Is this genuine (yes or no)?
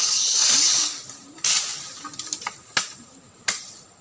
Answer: yes